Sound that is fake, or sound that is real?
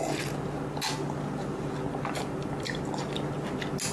real